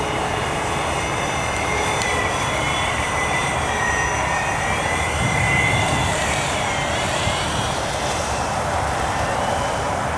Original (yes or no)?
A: no